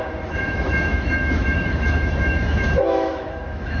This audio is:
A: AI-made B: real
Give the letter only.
A